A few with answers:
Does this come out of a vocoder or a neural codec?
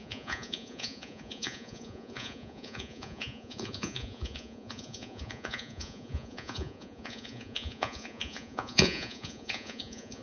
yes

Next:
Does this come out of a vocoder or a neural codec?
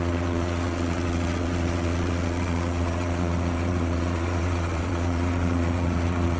yes